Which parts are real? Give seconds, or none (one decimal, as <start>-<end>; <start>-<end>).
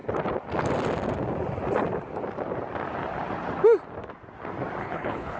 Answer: 0.0-4.8